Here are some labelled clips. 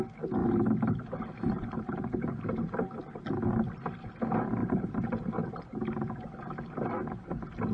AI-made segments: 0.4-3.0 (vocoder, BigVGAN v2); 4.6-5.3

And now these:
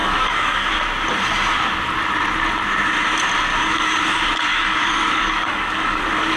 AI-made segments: 0.0-0.8 (codec, DAC); 3.5-4.0; 4.5-6.0

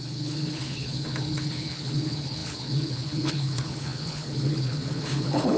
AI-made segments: 0.0-5.6 (codec, HILCodec)

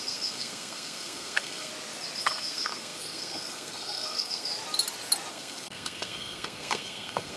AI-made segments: 0.0-1.7 (codec, SNAC); 2.2-4.5; 5.3-7.4